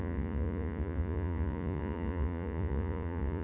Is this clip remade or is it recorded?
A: remade